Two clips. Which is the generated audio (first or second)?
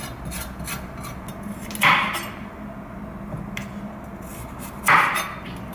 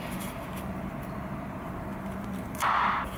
second